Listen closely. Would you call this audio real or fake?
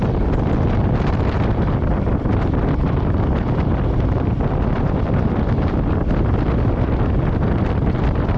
real